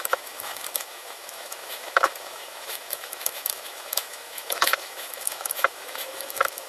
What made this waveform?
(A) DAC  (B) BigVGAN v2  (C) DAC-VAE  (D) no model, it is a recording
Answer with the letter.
C